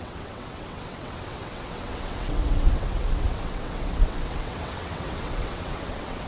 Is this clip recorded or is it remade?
remade